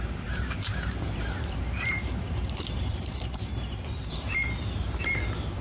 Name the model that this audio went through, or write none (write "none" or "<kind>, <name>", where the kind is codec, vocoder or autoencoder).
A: vocoder, BigVGAN v2